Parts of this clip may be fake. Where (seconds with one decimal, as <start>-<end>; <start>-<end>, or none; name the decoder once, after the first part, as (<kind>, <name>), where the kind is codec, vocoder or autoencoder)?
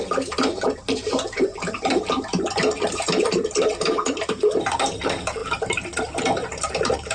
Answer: 0.0-7.1 (vocoder, BigVGAN v2)